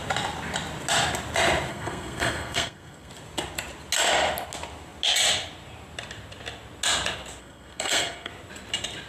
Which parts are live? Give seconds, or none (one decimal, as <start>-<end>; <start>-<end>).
0.0-1.7; 3.1-7.4; 8.3-9.1